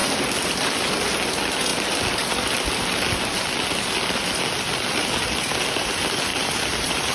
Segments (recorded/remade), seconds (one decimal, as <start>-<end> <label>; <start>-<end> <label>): 0.0-6.3 recorded; 6.3-7.1 remade